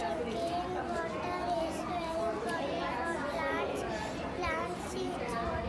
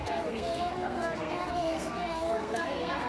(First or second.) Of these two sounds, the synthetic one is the second